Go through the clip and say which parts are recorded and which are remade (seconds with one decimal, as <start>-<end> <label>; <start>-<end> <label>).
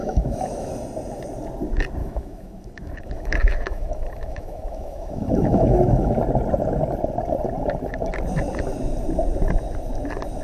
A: 0.0-0.7 remade; 0.7-2.0 recorded; 2.0-6.2 remade; 6.2-10.4 recorded